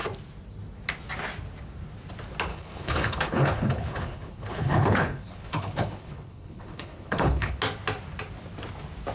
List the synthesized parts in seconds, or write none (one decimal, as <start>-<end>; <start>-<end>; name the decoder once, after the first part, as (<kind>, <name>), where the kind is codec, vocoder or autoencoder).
2.5-7.6 (codec, HILCodec)